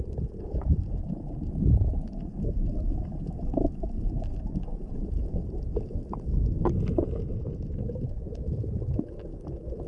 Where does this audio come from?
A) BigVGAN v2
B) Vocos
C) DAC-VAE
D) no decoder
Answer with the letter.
D